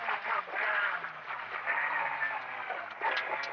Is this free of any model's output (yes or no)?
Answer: yes